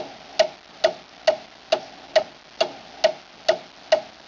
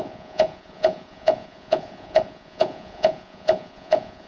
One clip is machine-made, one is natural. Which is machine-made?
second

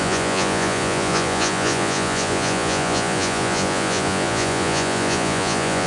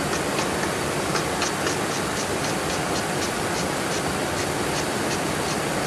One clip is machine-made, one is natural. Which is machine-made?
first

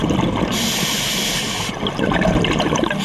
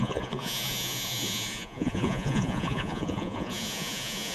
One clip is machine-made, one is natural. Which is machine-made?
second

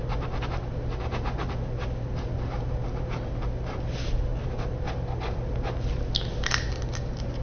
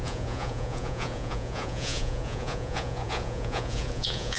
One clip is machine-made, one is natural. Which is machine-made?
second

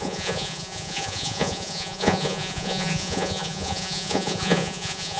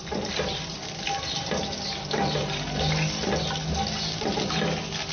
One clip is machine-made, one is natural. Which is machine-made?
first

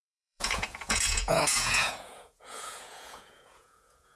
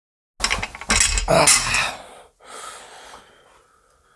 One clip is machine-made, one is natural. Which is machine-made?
first